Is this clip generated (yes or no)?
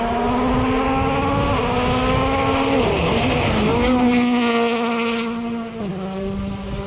no